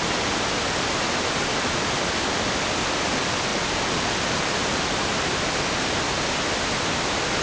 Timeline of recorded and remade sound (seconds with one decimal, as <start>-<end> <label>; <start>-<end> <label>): 0.0-7.4 recorded